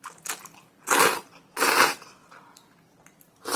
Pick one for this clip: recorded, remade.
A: recorded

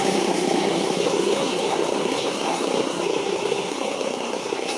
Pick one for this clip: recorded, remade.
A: remade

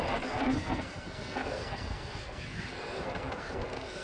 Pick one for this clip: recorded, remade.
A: remade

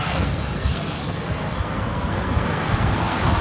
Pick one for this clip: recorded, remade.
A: remade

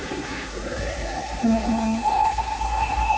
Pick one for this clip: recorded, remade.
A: remade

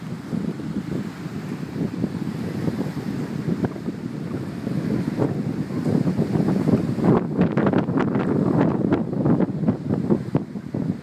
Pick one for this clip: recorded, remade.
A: recorded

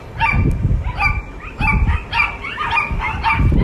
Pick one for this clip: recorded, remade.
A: recorded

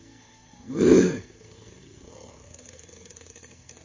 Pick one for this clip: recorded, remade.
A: remade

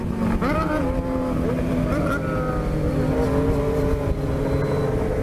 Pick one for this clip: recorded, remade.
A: recorded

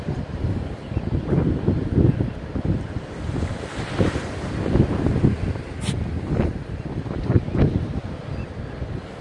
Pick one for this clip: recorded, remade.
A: recorded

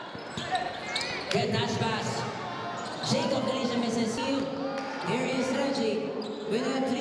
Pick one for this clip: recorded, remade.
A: recorded